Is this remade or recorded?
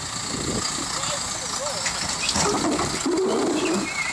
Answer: recorded